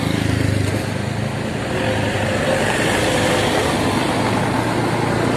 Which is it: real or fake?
real